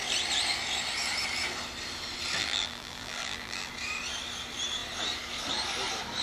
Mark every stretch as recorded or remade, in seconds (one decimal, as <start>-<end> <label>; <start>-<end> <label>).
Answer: 0.0-2.4 recorded; 2.4-3.7 remade; 3.7-6.2 recorded